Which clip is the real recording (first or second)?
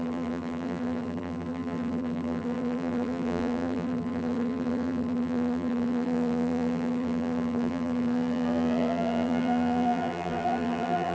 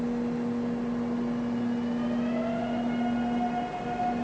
second